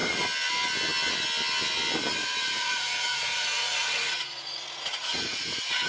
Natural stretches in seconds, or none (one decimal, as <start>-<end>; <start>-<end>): 0.0-2.2